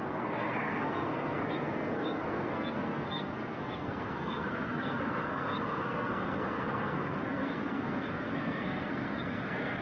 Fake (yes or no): yes